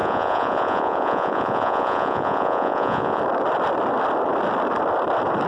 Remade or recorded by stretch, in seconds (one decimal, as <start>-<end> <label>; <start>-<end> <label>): 0.0-3.2 remade; 3.2-5.5 recorded